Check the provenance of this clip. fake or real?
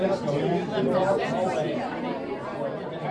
real